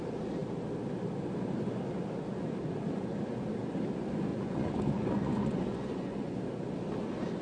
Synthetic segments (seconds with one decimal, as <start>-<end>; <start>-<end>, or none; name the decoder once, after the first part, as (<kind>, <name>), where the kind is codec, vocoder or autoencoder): 4.3-6.4 (vocoder, Vocos)